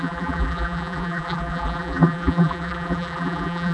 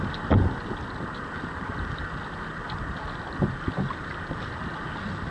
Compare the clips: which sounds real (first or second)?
second